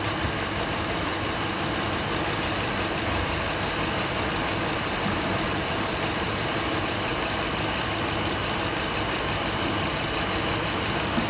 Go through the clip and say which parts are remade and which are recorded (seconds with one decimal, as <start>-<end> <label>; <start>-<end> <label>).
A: 0.0-11.3 recorded